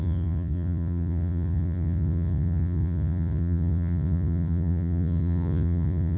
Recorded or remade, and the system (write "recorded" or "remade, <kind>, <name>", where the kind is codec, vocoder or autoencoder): remade, vocoder, Vocos